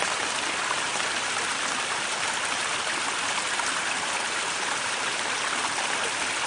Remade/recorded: recorded